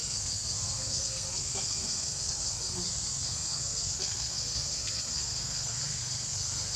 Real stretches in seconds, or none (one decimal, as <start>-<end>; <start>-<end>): none